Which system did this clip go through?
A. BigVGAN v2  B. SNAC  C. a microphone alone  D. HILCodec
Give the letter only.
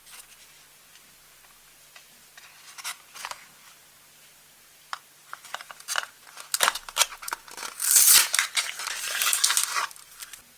C